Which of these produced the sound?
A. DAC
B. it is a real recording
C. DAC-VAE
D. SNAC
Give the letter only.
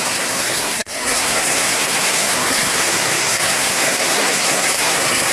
D